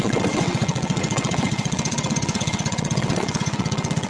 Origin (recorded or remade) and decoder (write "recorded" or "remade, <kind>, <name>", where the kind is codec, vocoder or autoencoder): remade, vocoder, WaveNeXt